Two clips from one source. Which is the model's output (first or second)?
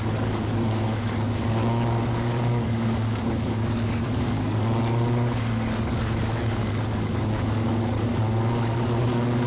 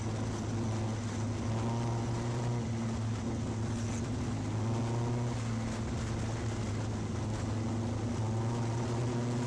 first